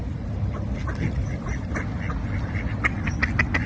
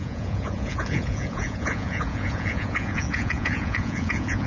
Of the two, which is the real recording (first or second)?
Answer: first